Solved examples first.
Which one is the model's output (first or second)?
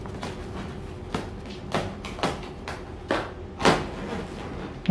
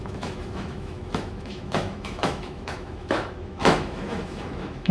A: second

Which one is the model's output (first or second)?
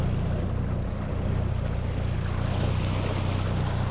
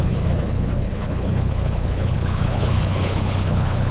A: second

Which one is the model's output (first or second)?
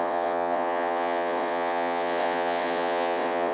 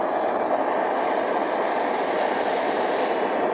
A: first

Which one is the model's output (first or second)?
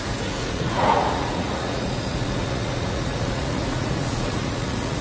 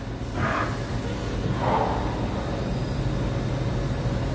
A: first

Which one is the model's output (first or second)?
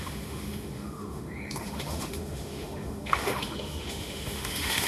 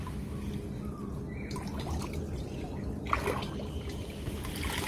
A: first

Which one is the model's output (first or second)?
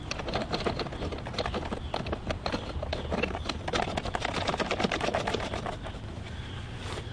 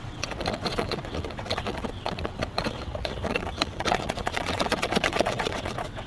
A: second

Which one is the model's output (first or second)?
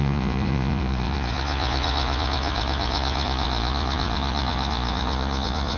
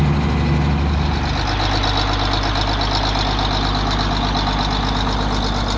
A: first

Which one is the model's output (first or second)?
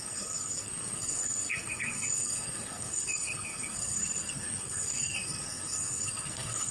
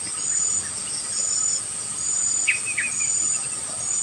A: first